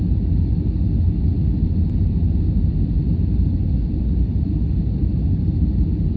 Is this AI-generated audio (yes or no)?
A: no